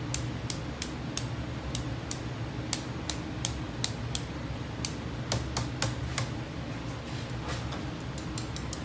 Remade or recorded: recorded